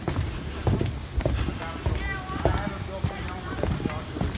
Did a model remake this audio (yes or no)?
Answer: no